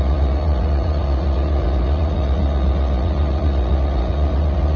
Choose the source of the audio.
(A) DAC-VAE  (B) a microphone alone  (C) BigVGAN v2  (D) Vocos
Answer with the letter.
D